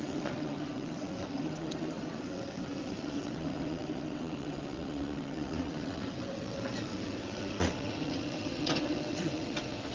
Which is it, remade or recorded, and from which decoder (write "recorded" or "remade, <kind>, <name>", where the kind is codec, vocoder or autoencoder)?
remade, vocoder, WaveNeXt